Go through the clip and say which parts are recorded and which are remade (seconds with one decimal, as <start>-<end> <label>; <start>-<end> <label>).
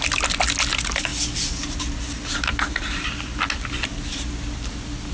0.0-5.1 recorded